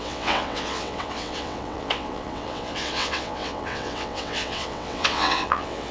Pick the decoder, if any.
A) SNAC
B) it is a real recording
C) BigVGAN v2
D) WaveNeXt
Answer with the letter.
D